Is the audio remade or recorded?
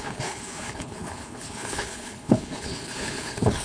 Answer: remade